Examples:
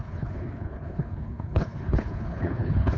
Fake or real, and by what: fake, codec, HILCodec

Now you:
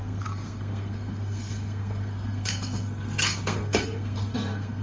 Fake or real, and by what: fake, codec, SNAC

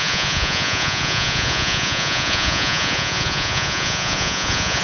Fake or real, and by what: fake, vocoder, Vocos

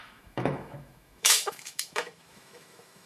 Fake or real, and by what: fake, autoencoder, DAC-VAE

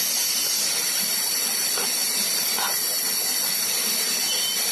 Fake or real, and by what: real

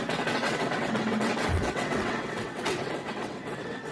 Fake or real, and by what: fake, vocoder, WaveNeXt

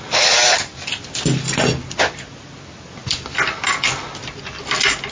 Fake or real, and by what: real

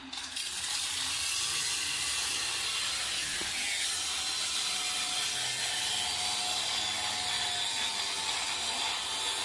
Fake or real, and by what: real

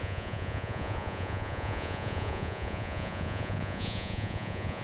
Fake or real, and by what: fake, vocoder, Vocos